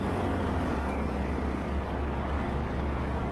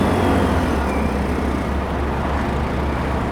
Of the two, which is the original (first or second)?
second